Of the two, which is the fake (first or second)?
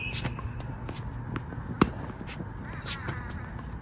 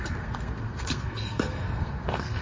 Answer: second